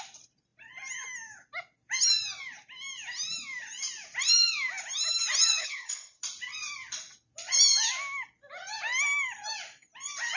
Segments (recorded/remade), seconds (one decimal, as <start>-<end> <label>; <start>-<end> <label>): 0.0-5.6 recorded; 5.6-6.2 remade; 6.2-10.4 recorded